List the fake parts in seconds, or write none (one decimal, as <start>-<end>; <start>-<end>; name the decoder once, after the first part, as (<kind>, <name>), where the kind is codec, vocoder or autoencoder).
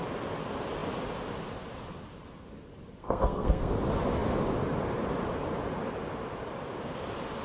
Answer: 3.0-3.7 (codec, SNAC)